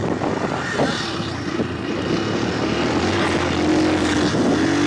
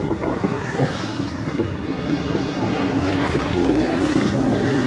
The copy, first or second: second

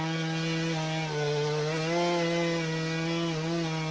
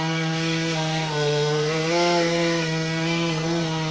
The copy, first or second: second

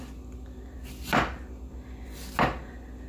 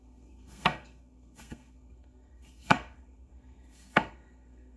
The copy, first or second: second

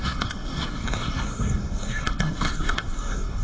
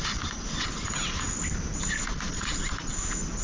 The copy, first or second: first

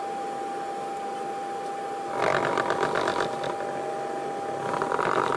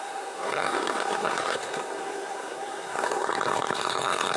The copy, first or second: second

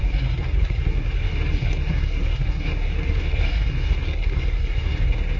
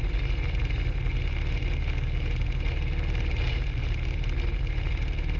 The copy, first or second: first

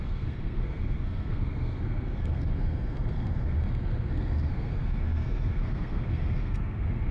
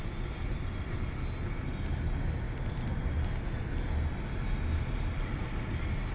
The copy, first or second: first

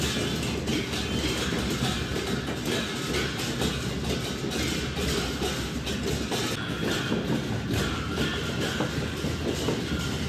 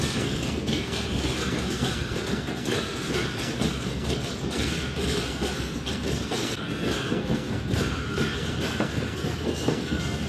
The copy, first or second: second